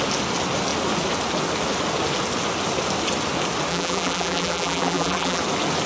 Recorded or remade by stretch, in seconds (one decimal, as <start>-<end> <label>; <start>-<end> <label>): 0.0-3.7 recorded; 3.7-5.4 remade; 5.4-5.9 recorded